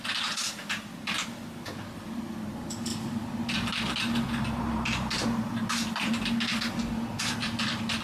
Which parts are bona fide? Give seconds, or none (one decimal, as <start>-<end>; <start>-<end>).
0.0-8.0